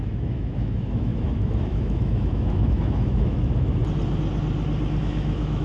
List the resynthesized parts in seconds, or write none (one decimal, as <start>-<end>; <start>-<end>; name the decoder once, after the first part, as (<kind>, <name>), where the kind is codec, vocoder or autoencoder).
0.0-3.8 (autoencoder, DAC-VAE); 5.0-5.6